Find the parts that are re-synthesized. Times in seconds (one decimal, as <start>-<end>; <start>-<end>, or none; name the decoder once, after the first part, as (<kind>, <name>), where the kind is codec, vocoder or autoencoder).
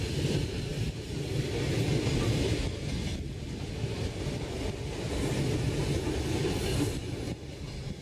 none